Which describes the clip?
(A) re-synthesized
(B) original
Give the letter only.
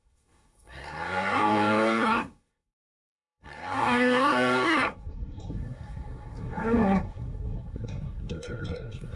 A